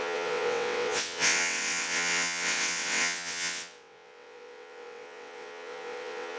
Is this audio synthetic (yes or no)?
yes